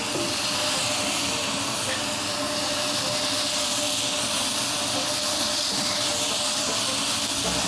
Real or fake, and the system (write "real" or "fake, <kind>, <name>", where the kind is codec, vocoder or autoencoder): real